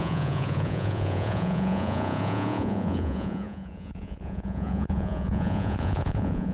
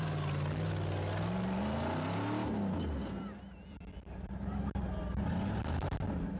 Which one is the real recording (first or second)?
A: second